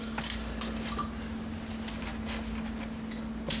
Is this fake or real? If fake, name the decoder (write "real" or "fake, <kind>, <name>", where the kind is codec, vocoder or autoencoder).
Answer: real